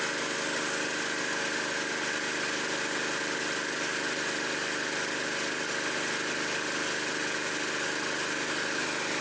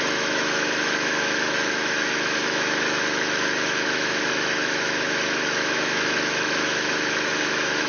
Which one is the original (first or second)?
first